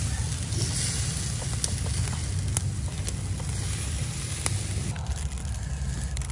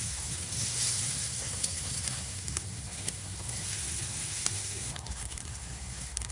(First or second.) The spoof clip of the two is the second